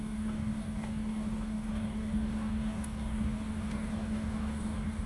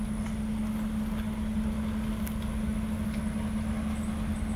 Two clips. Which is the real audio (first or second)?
second